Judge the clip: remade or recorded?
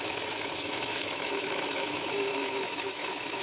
remade